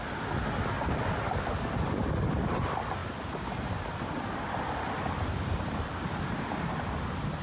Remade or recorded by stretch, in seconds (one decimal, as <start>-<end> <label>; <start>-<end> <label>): 0.0-7.4 recorded